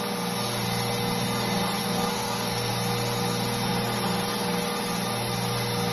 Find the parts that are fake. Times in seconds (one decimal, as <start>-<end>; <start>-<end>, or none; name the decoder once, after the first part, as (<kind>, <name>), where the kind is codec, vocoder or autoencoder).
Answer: 1.8-2.7 (codec, SNAC)